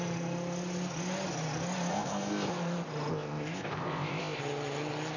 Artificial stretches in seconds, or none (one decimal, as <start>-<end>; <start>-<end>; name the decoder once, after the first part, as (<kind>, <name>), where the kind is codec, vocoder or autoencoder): 1.9-2.5 (codec, ZipCodec); 3.1-4.4